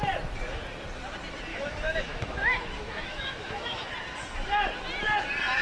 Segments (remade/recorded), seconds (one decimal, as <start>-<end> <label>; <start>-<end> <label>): 0.0-1.5 recorded; 1.5-3.9 remade; 3.9-5.6 recorded